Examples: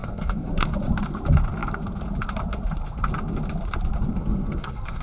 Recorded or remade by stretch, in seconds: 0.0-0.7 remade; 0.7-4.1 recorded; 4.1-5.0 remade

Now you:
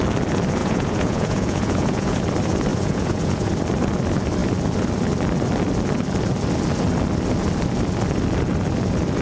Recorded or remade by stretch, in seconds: 0.0-0.6 recorded; 0.6-2.2 remade; 2.2-2.7 recorded; 2.7-3.5 remade; 3.5-9.2 recorded

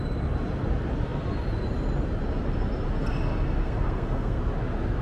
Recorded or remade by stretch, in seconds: 0.0-3.6 recorded; 3.6-4.4 remade; 4.4-5.0 recorded

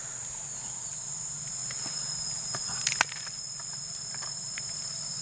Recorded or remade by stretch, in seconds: 0.0-5.2 recorded

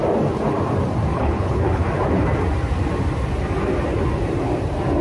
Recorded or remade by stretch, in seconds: 0.0-1.1 recorded; 1.1-1.8 remade; 1.8-5.0 recorded

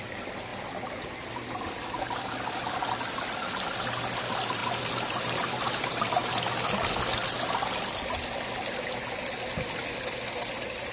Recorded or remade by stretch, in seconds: 0.0-0.5 remade; 0.5-1.1 recorded; 1.1-4.6 remade; 4.6-5.9 recorded; 5.9-7.2 remade; 7.2-10.3 recorded; 10.3-10.9 remade